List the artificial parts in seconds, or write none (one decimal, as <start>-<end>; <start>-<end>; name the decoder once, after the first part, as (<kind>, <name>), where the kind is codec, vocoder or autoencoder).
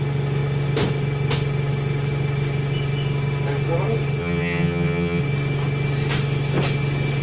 4.2-5.2 (vocoder, HiFi-GAN)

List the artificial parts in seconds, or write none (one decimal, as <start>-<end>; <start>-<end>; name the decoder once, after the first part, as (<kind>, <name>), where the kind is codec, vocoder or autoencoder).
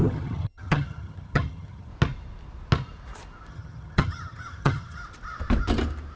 0.0-1.9 (vocoder, HiFi-GAN); 3.5-5.0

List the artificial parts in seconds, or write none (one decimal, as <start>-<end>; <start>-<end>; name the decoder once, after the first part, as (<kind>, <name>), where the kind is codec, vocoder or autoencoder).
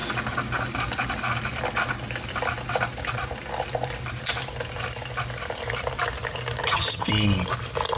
6.6-7.1 (vocoder, HiFi-GAN)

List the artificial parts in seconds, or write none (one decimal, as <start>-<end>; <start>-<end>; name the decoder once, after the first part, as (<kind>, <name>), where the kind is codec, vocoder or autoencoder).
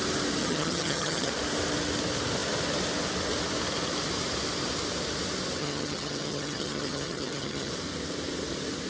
0.4-1.3 (vocoder, HiFi-GAN); 5.6-7.7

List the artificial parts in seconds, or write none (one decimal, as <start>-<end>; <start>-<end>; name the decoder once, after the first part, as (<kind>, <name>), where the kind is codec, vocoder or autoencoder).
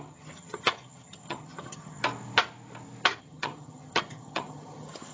0.0-2.0 (vocoder, HiFi-GAN); 3.2-5.1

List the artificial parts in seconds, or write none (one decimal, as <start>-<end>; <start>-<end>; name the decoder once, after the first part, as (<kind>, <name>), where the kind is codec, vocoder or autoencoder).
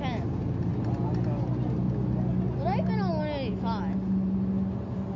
none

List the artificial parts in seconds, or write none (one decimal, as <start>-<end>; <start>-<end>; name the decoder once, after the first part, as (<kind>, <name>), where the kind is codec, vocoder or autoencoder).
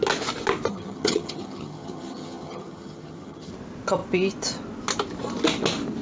0.7-3.5 (vocoder, HiFi-GAN)